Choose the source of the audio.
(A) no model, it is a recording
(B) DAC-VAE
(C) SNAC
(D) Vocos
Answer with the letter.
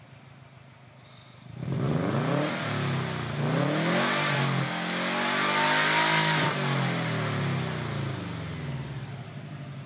A